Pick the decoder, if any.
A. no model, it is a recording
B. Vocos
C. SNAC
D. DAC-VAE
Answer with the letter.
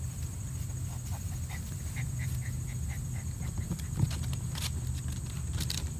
A